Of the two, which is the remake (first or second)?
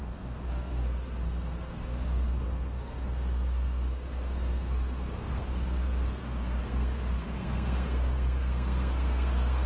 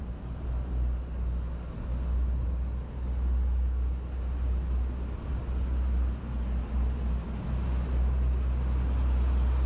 first